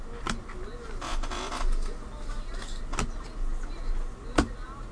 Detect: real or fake real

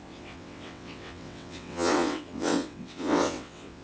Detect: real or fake fake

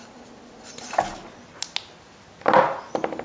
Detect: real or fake real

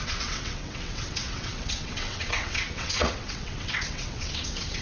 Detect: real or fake fake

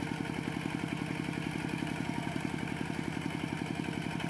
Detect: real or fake real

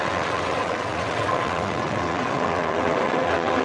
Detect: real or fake fake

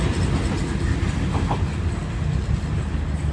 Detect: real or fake real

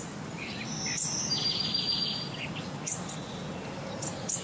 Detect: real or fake real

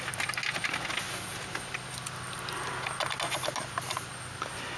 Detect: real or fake real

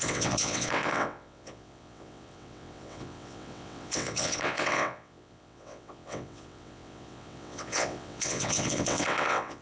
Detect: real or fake fake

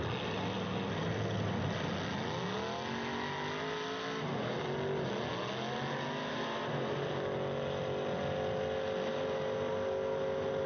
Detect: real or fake real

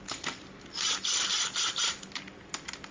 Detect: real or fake real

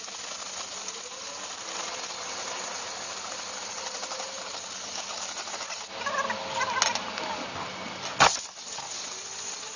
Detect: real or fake real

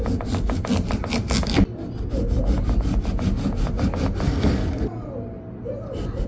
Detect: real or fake real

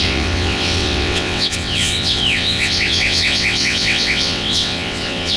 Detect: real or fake fake